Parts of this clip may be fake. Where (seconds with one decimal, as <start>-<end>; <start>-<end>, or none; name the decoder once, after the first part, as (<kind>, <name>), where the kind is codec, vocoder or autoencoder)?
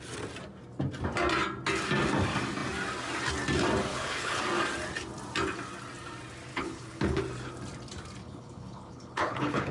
3.9-4.4 (codec, HILCodec); 6.5-7.2; 8.2-9.7